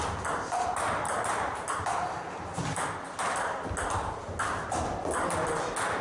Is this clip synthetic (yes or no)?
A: no